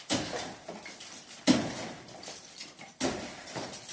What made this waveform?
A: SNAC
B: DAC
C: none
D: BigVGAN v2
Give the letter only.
C